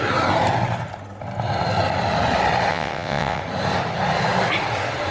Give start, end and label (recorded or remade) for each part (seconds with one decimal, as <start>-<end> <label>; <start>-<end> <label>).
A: 0.0-2.7 recorded; 2.7-3.4 remade; 3.4-5.1 recorded